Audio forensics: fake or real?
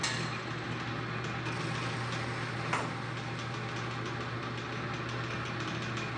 real